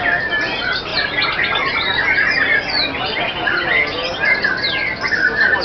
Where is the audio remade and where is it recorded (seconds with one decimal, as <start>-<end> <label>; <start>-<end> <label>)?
0.0-5.6 recorded